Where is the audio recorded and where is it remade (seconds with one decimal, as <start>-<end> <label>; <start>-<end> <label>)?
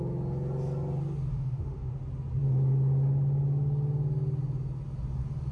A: 0.0-1.3 recorded; 1.3-1.9 remade; 1.9-5.5 recorded